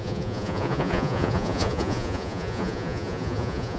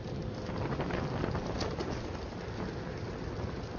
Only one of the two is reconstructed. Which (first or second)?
first